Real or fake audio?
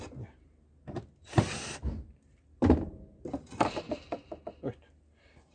real